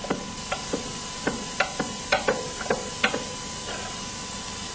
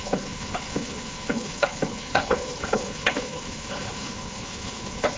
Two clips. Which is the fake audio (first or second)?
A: second